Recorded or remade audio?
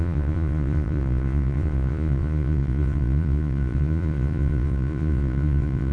remade